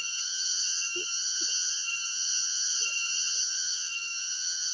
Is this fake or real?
fake